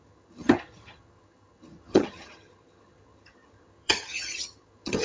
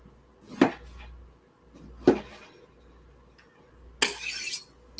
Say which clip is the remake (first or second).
first